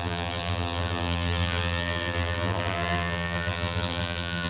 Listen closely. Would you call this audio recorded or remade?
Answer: remade